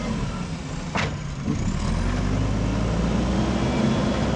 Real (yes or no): yes